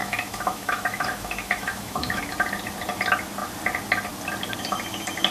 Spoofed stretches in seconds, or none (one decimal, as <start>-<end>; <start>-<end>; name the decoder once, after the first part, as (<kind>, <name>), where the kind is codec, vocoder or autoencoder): 0.0-2.2 (autoencoder, DAC-VAE)